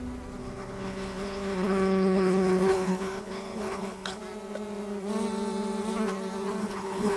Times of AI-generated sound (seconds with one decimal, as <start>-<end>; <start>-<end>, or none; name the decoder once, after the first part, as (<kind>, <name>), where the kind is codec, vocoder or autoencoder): 0.4-4.2 (codec, HILCodec); 6.6-7.2